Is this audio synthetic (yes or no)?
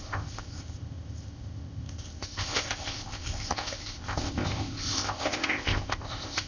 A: yes